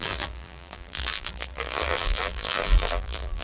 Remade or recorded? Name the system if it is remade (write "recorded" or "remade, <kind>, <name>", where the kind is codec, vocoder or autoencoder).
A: remade, vocoder, BigVGAN v2